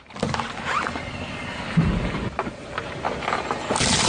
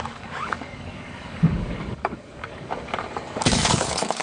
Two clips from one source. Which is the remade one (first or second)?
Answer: second